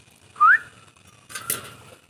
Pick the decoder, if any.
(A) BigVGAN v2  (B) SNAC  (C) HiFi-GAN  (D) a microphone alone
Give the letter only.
D